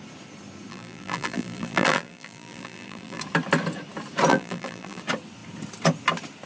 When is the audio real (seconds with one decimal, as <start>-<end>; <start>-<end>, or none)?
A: 0.0-0.7; 3.2-4.3; 5.0-6.5